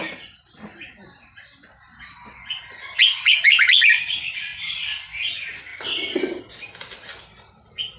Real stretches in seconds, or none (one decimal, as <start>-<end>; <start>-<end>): 0.0-8.0